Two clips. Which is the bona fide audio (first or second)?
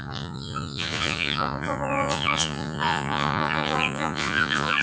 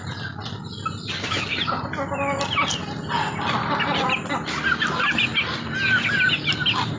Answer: second